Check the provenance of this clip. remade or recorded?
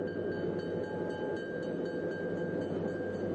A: recorded